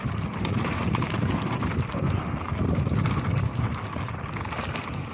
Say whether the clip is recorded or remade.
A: recorded